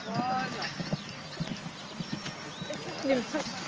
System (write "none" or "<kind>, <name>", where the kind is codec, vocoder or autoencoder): none